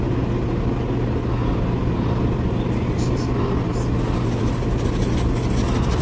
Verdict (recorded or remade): recorded